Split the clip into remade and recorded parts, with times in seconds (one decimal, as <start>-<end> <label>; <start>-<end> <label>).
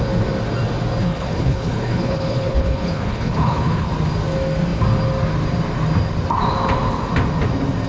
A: 0.0-1.0 recorded; 1.0-3.9 remade; 3.9-7.9 recorded